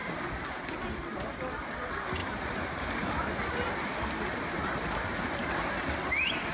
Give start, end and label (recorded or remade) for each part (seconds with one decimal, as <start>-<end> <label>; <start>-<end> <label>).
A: 0.0-2.2 recorded; 2.2-5.7 remade; 5.7-6.5 recorded